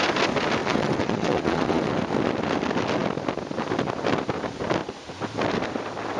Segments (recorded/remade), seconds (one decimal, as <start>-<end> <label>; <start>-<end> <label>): 0.0-0.6 recorded; 0.6-1.9 remade; 1.9-6.2 recorded